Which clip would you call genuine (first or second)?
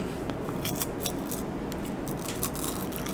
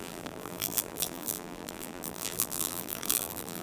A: first